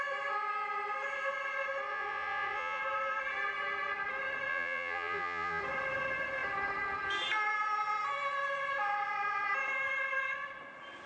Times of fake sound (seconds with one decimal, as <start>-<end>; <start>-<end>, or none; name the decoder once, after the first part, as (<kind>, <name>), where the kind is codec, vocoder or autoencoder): 1.9-2.8 (vocoder, Vocos); 4.5-5.6